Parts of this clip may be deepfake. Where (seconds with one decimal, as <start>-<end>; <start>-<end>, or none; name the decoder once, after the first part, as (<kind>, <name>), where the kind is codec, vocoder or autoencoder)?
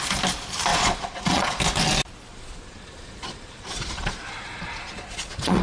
0.7-1.6 (vocoder, Vocos); 2.3-5.6